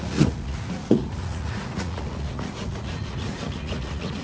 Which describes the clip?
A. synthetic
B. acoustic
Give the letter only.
A